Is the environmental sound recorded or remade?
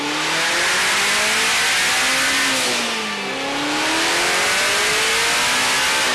recorded